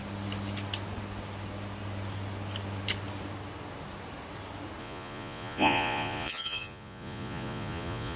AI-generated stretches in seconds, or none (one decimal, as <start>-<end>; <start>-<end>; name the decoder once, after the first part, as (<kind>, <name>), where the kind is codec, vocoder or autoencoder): 4.8-8.2 (vocoder, Vocos)